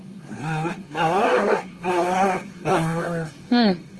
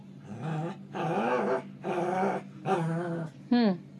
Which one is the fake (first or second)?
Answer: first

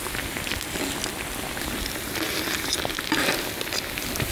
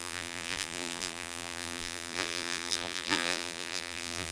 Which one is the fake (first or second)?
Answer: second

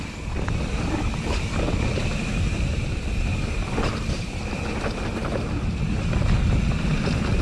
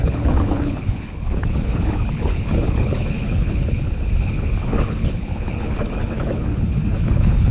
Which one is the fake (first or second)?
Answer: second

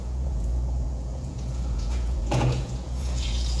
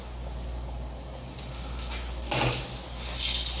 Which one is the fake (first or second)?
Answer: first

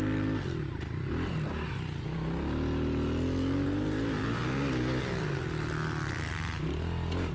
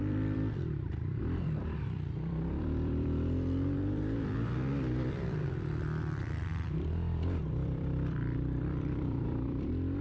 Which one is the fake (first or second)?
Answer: second